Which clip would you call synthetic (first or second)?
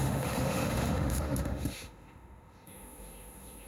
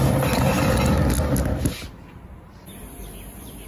first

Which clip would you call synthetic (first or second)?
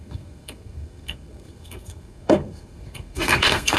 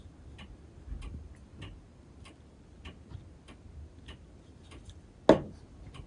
first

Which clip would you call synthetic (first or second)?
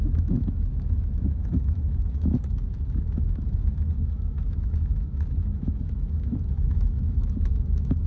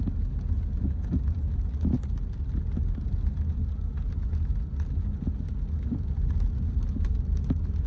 first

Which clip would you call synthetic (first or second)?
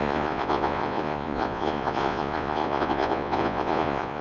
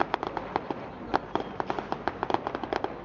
first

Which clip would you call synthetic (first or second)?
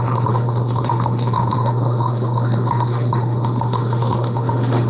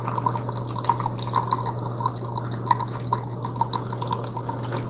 first